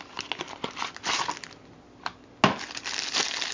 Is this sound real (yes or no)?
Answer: yes